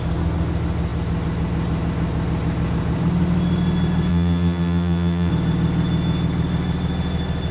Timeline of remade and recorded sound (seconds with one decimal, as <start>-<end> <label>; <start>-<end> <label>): 0.0-4.1 recorded; 4.1-5.3 remade; 5.3-7.5 recorded